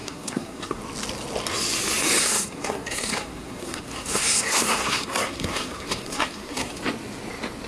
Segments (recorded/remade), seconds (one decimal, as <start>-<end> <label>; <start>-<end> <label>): 0.0-0.8 remade; 0.8-2.2 recorded; 2.2-6.8 remade; 6.8-7.7 recorded